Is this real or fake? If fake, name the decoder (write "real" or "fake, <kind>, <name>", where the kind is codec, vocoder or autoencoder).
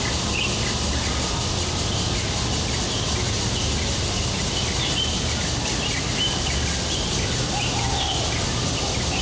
real